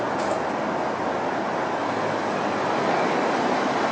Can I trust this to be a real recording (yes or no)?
yes